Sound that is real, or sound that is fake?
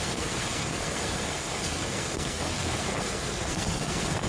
fake